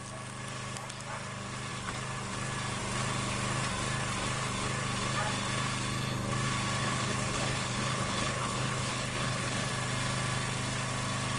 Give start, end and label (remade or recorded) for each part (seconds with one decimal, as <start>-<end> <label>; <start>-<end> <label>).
0.0-6.8 recorded; 6.8-9.7 remade; 9.7-11.4 recorded

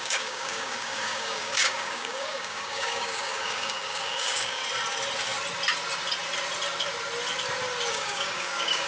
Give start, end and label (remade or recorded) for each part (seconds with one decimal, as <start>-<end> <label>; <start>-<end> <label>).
0.0-4.6 remade; 4.6-7.9 recorded; 7.9-8.9 remade

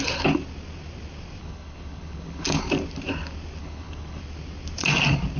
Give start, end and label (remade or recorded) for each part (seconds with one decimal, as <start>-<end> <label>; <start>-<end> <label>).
0.0-1.4 recorded; 1.4-2.6 remade; 2.6-3.6 recorded; 3.6-4.2 remade; 4.2-5.4 recorded

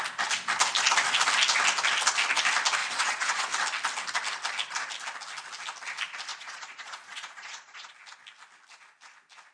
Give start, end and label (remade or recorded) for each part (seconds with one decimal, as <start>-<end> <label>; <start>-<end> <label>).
0.0-2.8 recorded; 2.8-3.5 remade; 3.5-6.3 recorded; 6.3-7.9 remade; 7.9-9.5 recorded

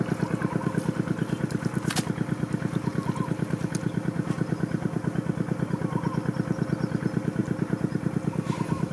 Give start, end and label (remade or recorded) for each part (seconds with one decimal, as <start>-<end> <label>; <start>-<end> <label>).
0.0-8.9 recorded

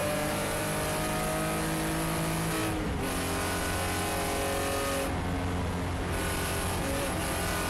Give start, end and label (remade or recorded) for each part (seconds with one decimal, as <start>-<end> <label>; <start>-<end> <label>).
0.0-0.6 remade; 0.6-7.7 recorded